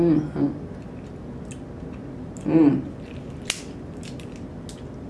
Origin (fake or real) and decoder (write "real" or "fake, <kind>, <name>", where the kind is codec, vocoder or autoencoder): real